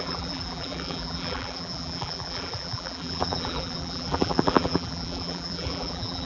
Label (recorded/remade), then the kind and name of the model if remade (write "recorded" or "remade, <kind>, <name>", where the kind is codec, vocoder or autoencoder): remade, vocoder, BigVGAN v2